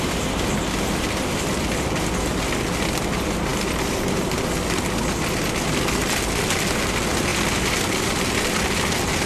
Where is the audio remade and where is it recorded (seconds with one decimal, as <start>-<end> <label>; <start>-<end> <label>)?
0.0-9.3 recorded